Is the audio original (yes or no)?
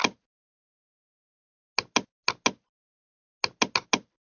yes